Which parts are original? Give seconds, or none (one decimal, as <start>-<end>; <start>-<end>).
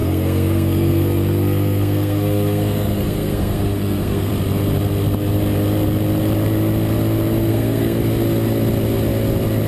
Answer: 4.3-7.5; 8.0-9.7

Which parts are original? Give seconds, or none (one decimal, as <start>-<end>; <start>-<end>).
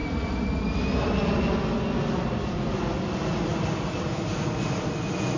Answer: 0.0-5.4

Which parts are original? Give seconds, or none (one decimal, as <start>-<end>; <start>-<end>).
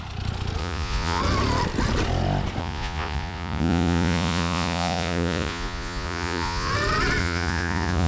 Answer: 0.0-0.6; 1.2-2.6; 6.7-7.2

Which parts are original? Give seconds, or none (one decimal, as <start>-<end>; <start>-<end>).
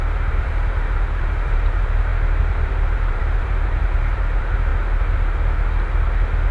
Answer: 4.7-6.5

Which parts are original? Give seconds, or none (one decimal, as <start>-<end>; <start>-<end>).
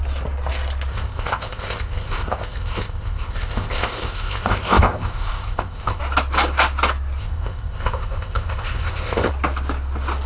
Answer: 0.0-0.9; 6.0-7.2; 9.3-10.3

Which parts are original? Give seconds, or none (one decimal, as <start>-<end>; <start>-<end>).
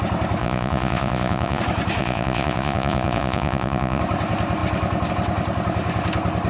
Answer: 0.0-0.4; 1.6-2.0; 4.0-6.5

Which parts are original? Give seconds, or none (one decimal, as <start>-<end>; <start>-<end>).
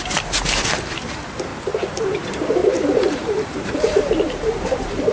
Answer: 1.5-2.0